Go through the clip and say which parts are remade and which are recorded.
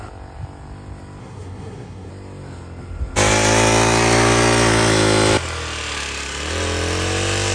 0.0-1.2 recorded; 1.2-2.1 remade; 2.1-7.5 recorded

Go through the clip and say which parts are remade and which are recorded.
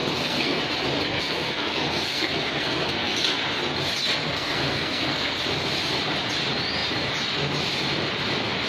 0.0-0.6 remade; 0.6-1.1 recorded; 1.1-3.4 remade; 3.4-4.2 recorded; 4.2-5.4 remade; 5.4-8.7 recorded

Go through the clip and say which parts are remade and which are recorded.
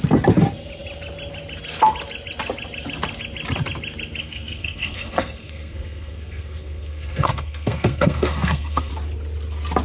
0.0-4.2 recorded; 4.2-8.9 remade; 8.9-9.8 recorded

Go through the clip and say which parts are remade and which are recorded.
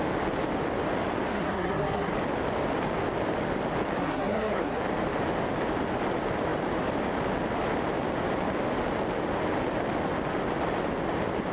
0.0-1.3 recorded; 1.3-2.1 remade; 2.1-4.0 recorded; 4.0-4.8 remade; 4.8-11.5 recorded